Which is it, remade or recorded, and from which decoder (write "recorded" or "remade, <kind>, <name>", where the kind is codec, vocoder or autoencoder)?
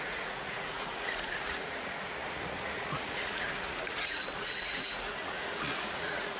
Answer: remade, vocoder, Vocos